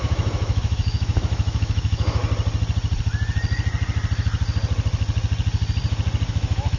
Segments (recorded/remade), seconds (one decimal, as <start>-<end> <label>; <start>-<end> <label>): 0.0-2.2 remade; 2.2-6.3 recorded; 6.3-6.8 remade